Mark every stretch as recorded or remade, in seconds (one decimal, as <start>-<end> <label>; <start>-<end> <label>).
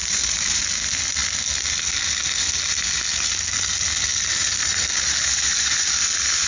0.0-0.6 remade; 0.6-6.5 recorded